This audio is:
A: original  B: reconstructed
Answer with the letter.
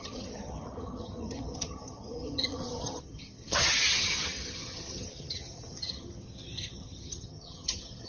B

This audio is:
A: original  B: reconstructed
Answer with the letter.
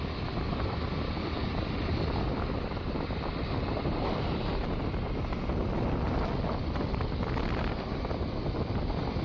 A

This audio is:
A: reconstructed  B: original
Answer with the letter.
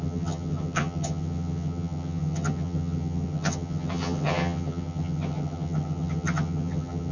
A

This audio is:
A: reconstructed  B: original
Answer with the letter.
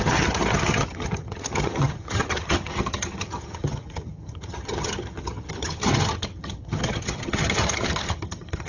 A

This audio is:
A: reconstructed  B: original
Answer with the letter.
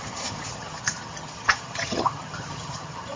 A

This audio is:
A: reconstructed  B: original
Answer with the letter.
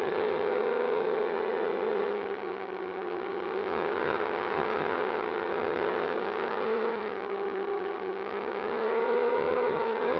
A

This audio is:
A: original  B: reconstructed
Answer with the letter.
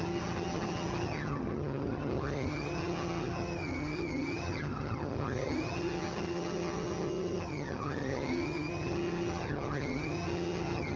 B